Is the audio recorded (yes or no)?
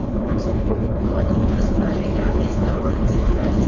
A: no